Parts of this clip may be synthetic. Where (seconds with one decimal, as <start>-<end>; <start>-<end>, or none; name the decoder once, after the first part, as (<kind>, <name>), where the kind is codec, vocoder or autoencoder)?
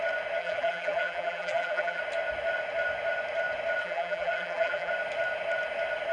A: 0.4-2.0 (vocoder, BigVGAN v2); 3.8-4.9